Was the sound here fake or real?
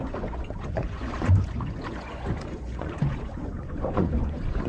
fake